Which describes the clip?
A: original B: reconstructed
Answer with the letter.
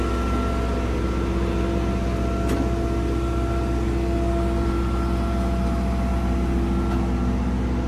A